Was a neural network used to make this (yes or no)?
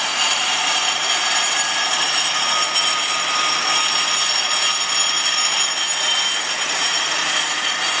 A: yes